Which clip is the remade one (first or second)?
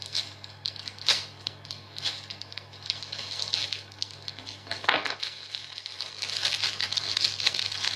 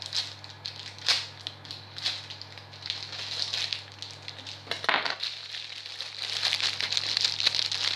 first